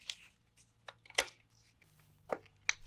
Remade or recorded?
recorded